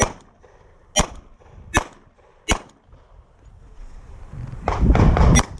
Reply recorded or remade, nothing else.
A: recorded